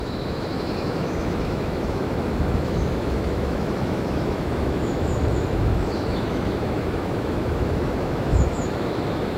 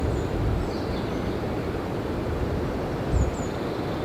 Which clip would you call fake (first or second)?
first